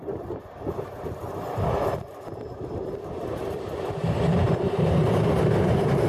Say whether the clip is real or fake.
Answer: fake